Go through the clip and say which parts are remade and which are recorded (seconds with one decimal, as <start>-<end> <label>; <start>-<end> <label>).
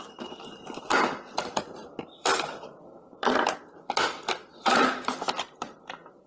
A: 0.0-6.3 remade